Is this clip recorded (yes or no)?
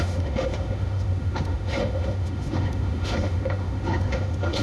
no